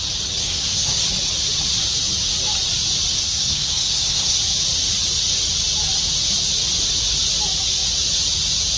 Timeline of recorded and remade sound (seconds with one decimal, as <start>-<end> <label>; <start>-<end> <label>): 0.0-0.4 recorded; 0.4-1.0 remade; 1.0-3.2 recorded; 3.2-4.4 remade; 4.4-8.8 recorded